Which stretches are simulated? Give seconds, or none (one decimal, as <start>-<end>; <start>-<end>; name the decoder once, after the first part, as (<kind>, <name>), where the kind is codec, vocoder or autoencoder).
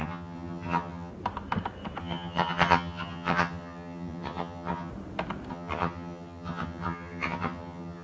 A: 0.0-1.1 (vocoder, HiFi-GAN); 2.0-4.9; 5.5-8.0